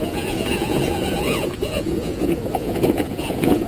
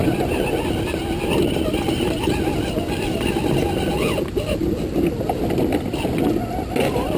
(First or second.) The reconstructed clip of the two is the first